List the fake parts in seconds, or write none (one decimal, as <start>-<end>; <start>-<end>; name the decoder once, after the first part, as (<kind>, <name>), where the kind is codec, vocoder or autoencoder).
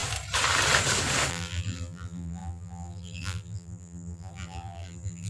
1.3-5.3 (vocoder, BigVGAN v2)